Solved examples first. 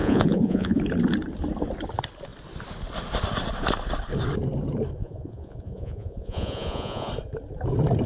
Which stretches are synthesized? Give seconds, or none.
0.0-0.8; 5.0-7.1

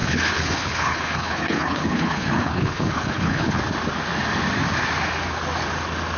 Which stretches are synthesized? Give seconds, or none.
0.0-3.6

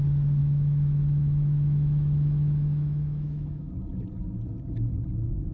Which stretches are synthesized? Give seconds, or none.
0.4-3.7